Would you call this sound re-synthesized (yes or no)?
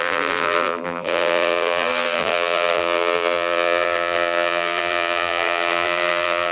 yes